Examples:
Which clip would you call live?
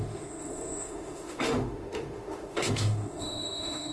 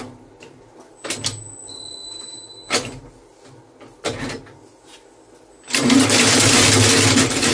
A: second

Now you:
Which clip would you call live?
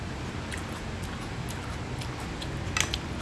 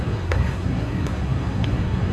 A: first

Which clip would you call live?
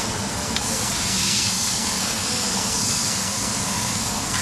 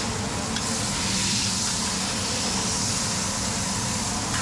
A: second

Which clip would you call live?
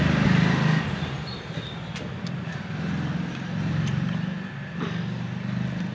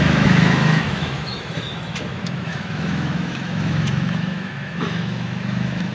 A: first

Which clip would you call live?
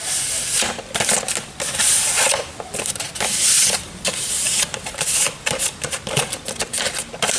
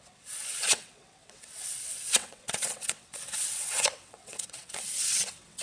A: first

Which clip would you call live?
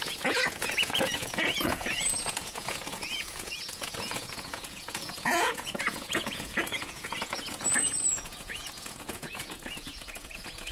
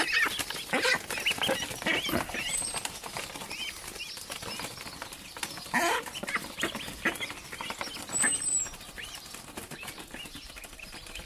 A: second